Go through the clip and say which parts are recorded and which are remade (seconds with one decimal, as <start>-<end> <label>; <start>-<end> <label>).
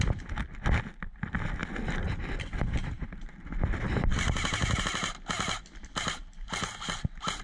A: 0.0-7.4 recorded